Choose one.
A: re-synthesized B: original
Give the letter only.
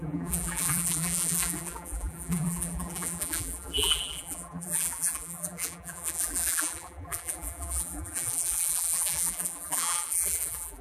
A